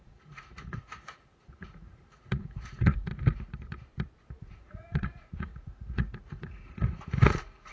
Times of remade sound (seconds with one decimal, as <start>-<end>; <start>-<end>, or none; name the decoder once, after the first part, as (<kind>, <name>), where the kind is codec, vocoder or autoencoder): 0.0-3.1 (vocoder, Vocos); 4.4-7.7